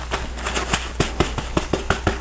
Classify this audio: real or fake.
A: real